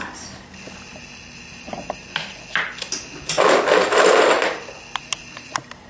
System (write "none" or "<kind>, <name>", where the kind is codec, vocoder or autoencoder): none